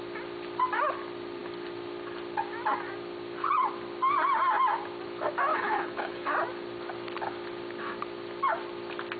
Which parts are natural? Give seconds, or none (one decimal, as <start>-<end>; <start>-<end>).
0.0-5.5; 6.3-9.2